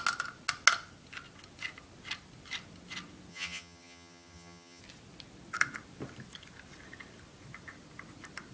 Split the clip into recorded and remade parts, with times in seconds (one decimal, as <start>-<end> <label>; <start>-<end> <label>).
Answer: 0.0-3.3 recorded; 3.3-4.8 remade; 4.8-8.5 recorded